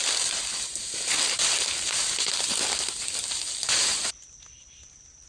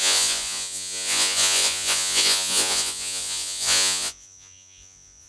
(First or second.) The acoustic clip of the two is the first